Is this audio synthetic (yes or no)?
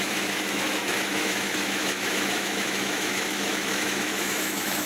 yes